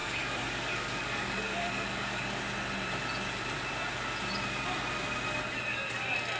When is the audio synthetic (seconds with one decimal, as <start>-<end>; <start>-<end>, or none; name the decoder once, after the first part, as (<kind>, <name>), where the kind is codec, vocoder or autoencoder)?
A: 0.0-2.4 (codec, DAC)